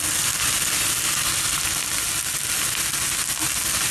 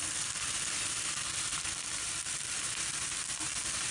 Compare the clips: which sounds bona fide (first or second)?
first